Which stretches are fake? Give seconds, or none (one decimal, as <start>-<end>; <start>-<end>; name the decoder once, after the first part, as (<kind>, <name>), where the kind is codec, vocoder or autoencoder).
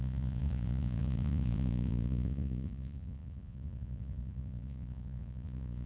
0.0-5.9 (vocoder, Vocos)